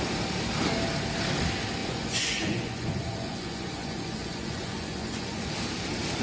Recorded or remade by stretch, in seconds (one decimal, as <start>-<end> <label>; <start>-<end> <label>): 0.0-1.8 recorded; 1.8-5.5 remade; 5.5-6.2 recorded